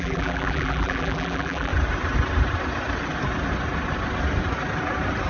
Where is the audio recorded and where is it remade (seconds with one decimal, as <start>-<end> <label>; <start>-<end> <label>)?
0.0-1.7 remade; 1.7-5.3 recorded